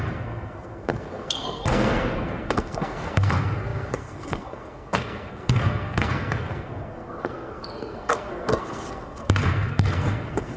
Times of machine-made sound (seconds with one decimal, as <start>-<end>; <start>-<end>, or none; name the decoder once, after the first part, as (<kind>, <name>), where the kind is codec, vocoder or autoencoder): 0.0-10.6 (codec, SNAC)